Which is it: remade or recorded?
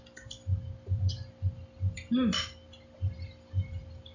recorded